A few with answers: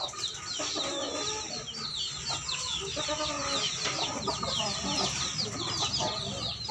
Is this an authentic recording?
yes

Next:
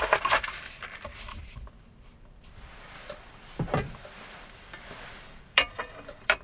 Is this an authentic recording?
no